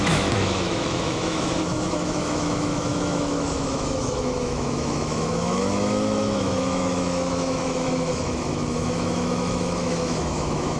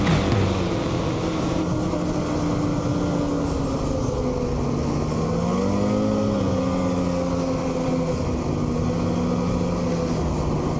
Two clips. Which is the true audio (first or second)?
second